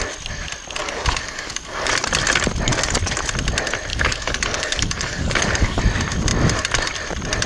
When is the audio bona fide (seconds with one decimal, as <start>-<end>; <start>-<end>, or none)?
0.0-0.8; 1.9-3.9; 5.8-7.5